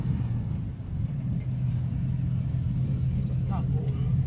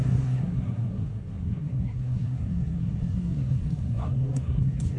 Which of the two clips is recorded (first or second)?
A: first